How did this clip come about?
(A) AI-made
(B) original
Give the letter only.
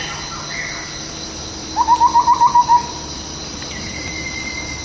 B